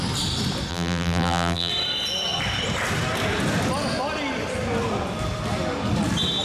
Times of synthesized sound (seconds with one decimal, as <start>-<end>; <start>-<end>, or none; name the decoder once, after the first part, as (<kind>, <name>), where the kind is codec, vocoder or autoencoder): 0.7-1.7 (vocoder, BigVGAN v2)